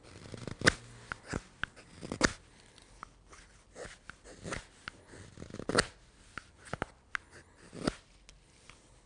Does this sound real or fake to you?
real